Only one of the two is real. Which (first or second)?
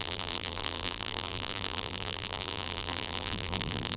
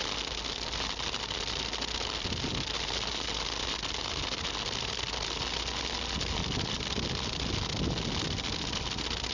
second